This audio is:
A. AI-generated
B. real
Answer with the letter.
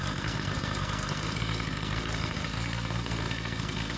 A